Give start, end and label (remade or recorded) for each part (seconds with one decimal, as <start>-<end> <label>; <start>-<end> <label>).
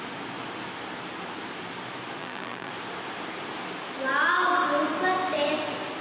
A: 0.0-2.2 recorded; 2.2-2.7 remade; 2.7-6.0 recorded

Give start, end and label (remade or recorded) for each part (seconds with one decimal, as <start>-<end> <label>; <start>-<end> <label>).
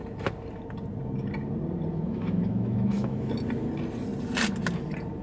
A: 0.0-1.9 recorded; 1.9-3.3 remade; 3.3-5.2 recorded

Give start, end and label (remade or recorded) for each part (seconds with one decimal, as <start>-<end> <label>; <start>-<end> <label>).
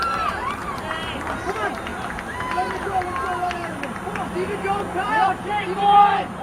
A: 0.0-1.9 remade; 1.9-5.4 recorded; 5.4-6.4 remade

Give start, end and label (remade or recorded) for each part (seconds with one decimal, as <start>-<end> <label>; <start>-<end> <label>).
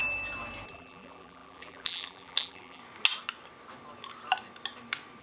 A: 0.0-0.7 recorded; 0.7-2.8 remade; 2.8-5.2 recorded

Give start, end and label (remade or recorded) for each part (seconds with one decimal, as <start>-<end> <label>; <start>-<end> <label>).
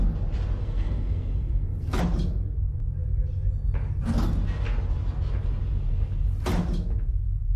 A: 0.0-0.6 recorded; 0.6-2.0 remade; 2.0-7.6 recorded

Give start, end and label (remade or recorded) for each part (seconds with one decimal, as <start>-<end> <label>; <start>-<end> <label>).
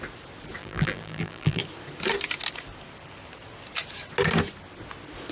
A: 0.0-0.6 recorded; 0.6-1.6 remade; 1.6-5.3 recorded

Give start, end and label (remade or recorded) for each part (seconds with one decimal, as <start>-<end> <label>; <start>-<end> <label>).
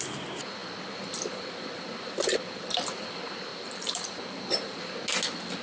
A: 0.0-3.5 recorded; 3.5-4.8 remade; 4.8-5.6 recorded